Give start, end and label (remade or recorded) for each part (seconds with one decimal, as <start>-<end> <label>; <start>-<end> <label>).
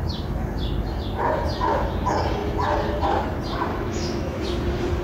0.0-3.7 recorded; 3.7-4.4 remade; 4.4-5.0 recorded